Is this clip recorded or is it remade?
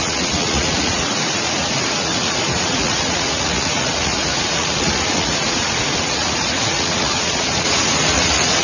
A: remade